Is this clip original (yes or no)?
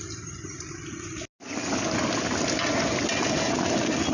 yes